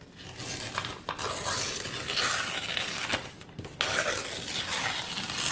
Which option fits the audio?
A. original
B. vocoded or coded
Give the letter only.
A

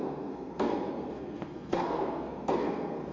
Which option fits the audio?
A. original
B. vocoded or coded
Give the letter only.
B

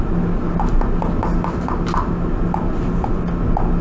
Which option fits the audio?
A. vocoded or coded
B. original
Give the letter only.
B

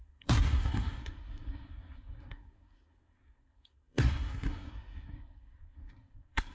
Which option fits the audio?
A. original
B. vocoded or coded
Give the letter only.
B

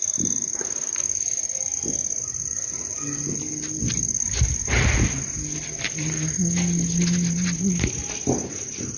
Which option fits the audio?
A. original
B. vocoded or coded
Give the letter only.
A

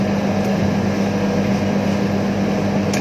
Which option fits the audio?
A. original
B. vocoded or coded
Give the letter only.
A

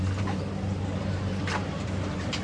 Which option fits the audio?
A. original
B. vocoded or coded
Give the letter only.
A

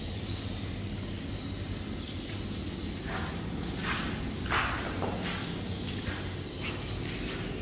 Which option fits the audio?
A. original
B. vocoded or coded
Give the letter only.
A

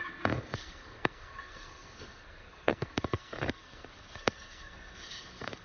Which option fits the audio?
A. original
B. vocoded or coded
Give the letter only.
B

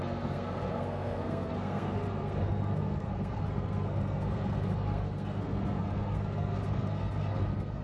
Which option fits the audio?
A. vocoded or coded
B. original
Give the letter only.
A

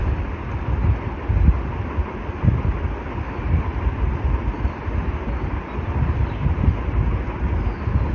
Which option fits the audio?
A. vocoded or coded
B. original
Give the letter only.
B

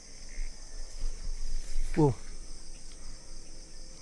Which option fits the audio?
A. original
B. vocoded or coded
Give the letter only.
A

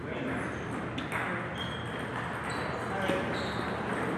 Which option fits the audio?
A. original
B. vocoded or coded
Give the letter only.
A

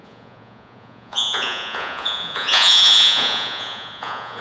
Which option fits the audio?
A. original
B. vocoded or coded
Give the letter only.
B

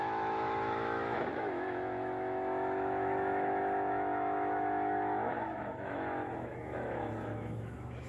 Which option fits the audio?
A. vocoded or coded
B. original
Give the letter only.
A